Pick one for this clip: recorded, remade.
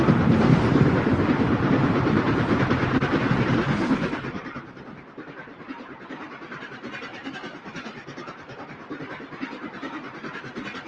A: remade